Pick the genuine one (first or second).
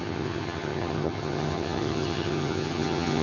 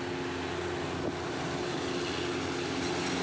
second